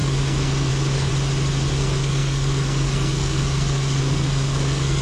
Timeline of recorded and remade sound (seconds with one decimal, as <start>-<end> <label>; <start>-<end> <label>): 0.0-1.1 remade; 1.1-1.7 recorded; 1.7-5.0 remade

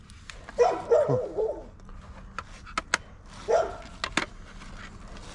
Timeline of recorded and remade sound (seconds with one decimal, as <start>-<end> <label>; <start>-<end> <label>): 0.0-5.3 recorded

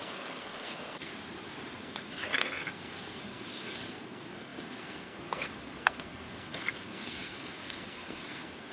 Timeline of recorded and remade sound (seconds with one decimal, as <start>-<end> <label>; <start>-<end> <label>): 0.0-1.1 remade; 1.1-1.8 recorded; 1.8-8.7 remade

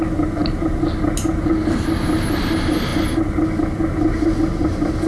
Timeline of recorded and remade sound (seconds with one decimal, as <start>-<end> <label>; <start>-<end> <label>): 0.0-5.1 recorded

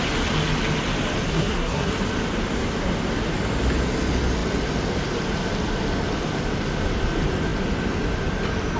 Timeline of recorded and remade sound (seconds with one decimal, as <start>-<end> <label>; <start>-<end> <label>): 0.0-1.3 recorded; 1.3-1.9 remade; 1.9-8.8 recorded

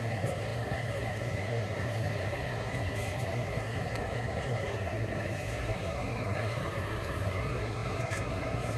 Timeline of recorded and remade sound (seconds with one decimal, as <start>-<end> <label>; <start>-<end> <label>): 0.0-8.8 remade

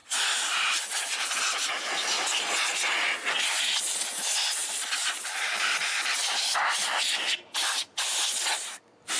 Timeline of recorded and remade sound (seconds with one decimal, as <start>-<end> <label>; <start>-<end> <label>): 0.0-9.2 recorded

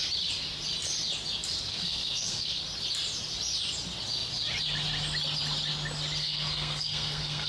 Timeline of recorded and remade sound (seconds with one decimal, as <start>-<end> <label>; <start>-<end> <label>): 0.0-1.7 recorded; 1.7-2.6 remade; 2.6-6.2 recorded; 6.2-7.5 remade